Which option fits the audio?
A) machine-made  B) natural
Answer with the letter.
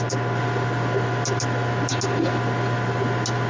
B